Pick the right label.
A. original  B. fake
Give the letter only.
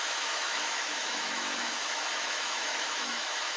B